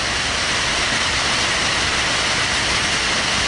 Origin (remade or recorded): recorded